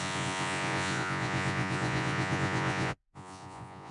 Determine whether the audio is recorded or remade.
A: remade